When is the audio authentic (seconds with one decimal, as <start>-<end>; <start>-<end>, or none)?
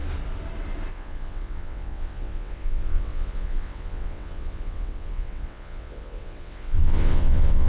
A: 0.0-0.9